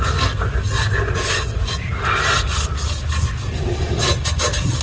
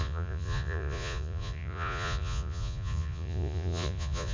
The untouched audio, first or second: first